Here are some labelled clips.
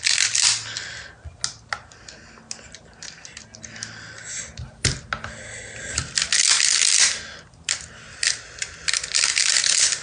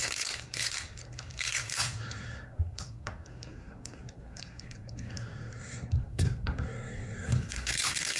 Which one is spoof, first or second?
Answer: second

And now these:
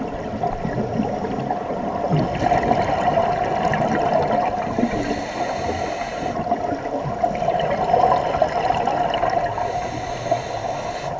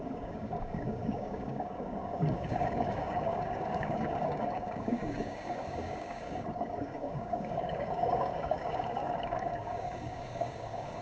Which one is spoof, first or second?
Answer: second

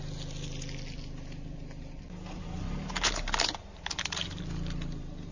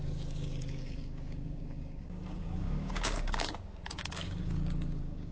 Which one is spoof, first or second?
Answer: second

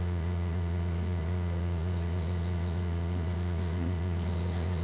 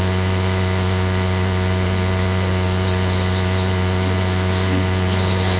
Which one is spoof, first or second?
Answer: first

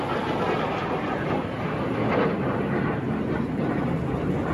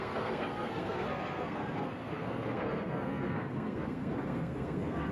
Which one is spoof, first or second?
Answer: second